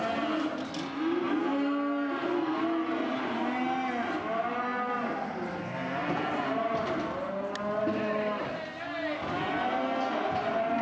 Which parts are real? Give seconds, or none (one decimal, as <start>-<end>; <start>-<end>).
0.0-6.0; 6.7-10.8